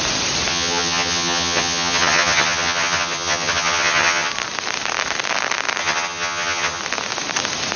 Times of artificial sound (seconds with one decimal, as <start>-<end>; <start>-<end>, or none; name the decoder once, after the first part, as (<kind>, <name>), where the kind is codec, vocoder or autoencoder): 0.5-4.3 (vocoder, HiFi-GAN); 5.8-6.8